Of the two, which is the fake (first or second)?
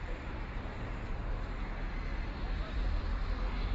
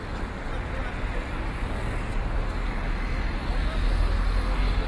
first